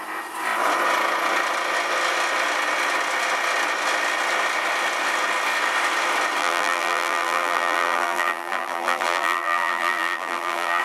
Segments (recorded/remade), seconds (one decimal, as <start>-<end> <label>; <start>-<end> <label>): 0.0-6.4 recorded; 6.4-10.8 remade